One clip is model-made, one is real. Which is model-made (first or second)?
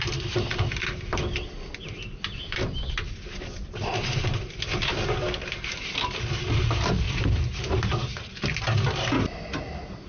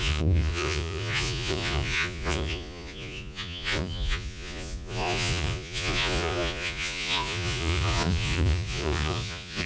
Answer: second